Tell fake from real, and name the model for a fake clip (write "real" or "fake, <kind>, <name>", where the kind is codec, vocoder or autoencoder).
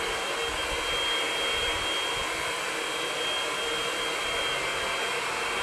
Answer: real